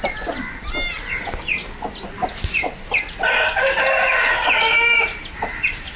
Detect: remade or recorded recorded